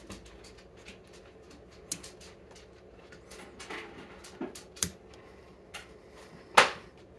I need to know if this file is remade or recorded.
recorded